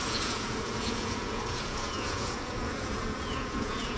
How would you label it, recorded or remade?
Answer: remade